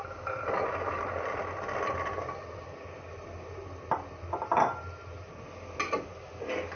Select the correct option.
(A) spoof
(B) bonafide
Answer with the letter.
B